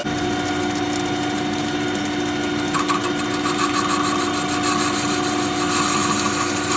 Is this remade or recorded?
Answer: recorded